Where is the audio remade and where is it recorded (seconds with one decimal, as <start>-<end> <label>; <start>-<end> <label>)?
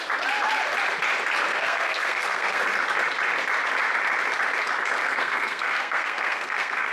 0.0-1.5 recorded; 1.5-2.6 remade; 2.6-5.0 recorded; 5.0-6.9 remade